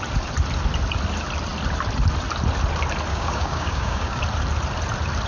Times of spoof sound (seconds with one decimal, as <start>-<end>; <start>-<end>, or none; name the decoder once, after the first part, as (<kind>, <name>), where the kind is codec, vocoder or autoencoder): 3.1-4.2 (codec, DAC)